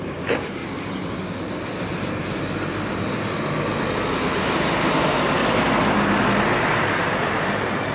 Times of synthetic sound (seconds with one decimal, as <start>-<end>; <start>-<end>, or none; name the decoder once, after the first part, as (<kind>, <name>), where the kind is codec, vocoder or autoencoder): 0.0-0.6 (vocoder, BigVGAN v2); 4.1-5.4; 6.4-7.9

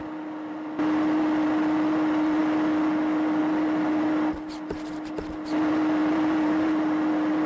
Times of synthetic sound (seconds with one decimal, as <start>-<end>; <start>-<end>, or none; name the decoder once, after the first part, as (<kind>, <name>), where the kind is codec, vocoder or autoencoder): 6.0-6.8 (vocoder, BigVGAN v2)

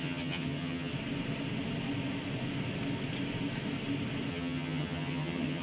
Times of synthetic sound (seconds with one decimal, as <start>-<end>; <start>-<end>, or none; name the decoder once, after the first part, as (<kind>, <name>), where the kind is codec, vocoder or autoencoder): 0.0-0.9 (vocoder, HiFi-GAN); 4.3-5.6